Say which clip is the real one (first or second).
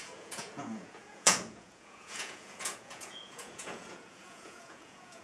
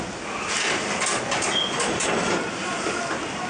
second